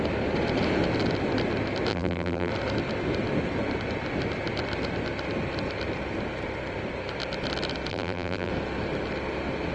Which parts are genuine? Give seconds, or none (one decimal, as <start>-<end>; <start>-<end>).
0.0-1.9; 2.5-7.9; 8.5-9.7